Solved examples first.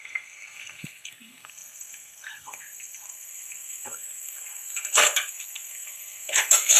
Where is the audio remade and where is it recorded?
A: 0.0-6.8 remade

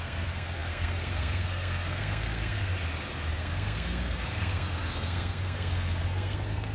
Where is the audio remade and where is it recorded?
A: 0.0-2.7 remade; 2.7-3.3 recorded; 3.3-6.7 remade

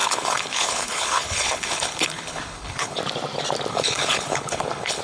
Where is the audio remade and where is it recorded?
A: 0.0-3.0 remade; 3.0-3.7 recorded; 3.7-5.0 remade